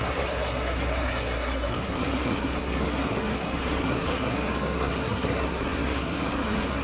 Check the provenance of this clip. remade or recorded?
remade